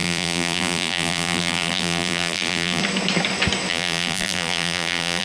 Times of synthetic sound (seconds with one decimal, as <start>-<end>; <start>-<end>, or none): 0.0-2.8; 3.7-5.2